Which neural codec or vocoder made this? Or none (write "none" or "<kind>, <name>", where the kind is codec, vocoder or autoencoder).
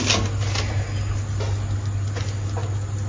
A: none